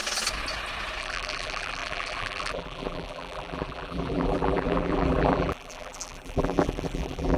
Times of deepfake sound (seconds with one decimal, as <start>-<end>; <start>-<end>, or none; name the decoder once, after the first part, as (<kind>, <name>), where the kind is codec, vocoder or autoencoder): 1.0-7.4 (vocoder, BigVGAN v2)